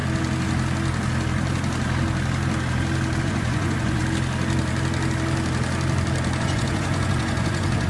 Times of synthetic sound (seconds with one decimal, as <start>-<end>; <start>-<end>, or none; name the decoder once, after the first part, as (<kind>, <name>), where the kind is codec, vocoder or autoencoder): 3.2-4.0 (vocoder, Vocos); 6.4-7.9